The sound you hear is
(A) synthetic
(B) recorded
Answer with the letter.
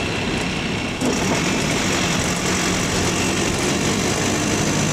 B